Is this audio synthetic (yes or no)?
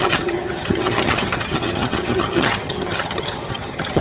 yes